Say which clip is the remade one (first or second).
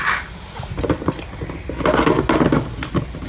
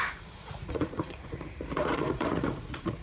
second